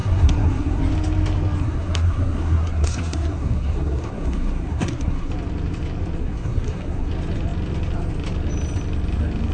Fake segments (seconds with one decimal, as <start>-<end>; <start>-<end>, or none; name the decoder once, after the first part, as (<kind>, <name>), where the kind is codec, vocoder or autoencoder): 0.0-0.8 (codec, SNAC); 1.6-5.3; 6.2-7.1